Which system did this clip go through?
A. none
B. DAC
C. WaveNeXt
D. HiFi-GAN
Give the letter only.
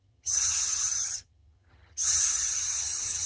D